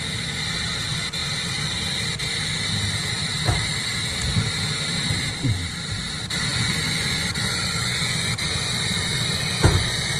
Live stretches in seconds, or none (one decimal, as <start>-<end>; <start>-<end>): 0.0-6.5